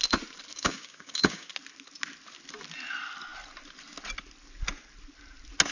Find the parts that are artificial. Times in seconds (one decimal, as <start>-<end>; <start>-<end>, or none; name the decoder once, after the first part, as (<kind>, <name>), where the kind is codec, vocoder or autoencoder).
0.5-1.5 (codec, DAC)